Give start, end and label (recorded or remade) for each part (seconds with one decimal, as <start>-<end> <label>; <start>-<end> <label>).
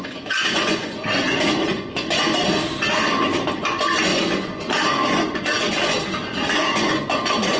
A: 0.0-2.3 remade; 2.3-2.9 recorded; 2.9-7.6 remade